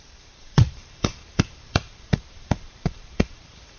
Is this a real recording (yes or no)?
no